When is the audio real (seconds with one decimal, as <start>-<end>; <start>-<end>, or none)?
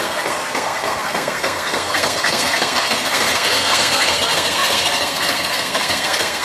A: none